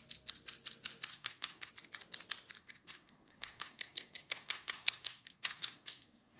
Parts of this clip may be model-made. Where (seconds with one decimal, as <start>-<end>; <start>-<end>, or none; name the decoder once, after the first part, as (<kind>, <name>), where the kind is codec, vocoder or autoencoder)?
1.1-1.7 (codec, SNAC); 2.6-6.4